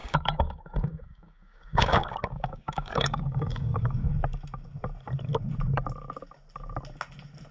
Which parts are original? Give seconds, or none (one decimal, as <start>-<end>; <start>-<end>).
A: 4.1-7.5